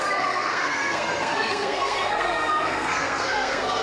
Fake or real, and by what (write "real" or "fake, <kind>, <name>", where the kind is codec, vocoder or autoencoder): fake, codec, SNAC